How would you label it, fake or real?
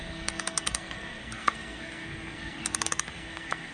fake